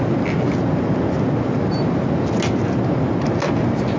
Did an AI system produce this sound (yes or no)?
no